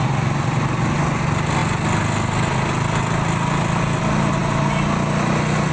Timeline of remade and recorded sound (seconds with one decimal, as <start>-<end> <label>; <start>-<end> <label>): 0.0-5.7 recorded